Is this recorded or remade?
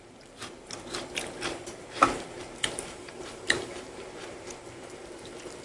remade